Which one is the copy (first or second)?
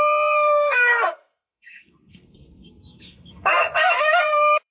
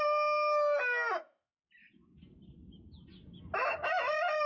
first